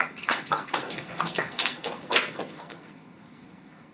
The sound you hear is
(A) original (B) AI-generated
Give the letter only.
B